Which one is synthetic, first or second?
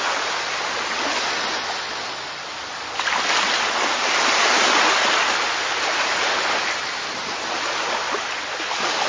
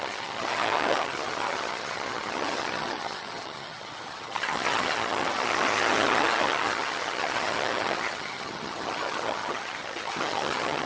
second